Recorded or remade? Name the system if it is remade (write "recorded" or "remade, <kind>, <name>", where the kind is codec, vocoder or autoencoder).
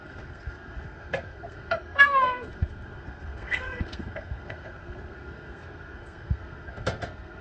remade, codec, SNAC